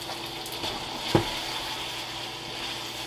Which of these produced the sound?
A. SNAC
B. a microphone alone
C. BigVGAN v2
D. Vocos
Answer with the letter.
B